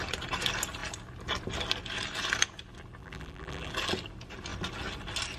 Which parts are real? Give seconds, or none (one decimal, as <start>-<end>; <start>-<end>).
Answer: 0.0-3.0; 3.7-5.4